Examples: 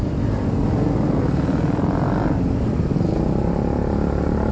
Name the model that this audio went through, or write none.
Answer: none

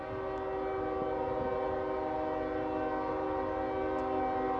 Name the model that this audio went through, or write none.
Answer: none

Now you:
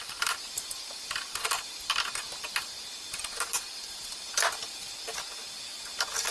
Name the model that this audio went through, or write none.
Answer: none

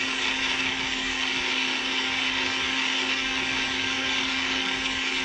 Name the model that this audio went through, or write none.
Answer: codec, DAC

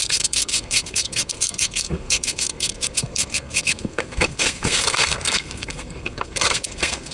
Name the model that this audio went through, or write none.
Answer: codec, SNAC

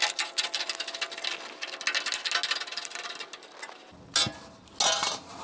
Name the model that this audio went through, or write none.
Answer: none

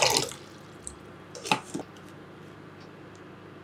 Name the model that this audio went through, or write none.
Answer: none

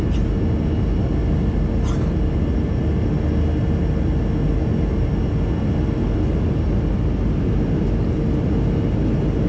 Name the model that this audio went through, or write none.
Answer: none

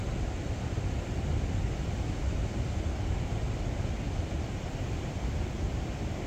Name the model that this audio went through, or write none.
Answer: none